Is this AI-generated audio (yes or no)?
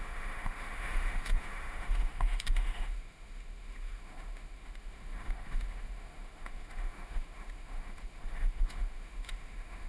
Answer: yes